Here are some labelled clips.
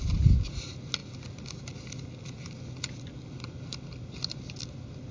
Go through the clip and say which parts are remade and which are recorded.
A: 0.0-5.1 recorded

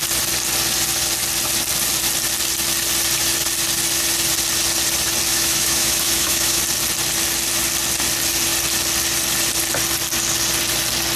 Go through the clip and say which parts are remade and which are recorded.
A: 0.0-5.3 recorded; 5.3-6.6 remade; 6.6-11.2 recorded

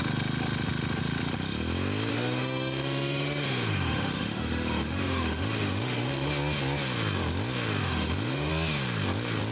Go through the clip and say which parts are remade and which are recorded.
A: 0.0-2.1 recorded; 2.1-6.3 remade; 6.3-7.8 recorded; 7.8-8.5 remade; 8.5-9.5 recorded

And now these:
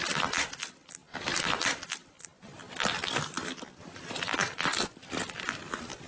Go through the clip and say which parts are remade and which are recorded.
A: 0.0-6.1 recorded

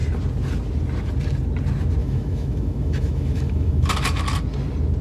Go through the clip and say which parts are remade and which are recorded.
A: 0.0-2.0 recorded; 2.0-3.9 remade; 3.9-5.0 recorded

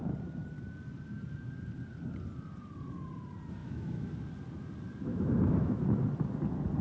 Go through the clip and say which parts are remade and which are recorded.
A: 0.0-3.6 recorded; 3.6-4.1 remade; 4.1-5.1 recorded; 5.1-5.8 remade; 5.8-6.8 recorded

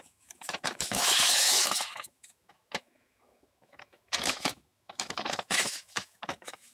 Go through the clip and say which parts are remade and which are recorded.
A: 0.0-6.7 remade

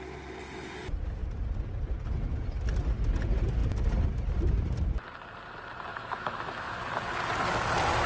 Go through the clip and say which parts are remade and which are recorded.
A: 0.0-5.9 recorded; 5.9-6.8 remade; 6.8-8.1 recorded